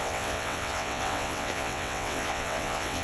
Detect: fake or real fake